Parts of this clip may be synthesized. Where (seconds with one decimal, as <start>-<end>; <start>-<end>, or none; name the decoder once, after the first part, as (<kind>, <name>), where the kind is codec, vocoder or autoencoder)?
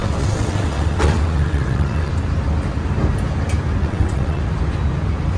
0.0-2.1 (vocoder, WaveNeXt); 3.8-4.4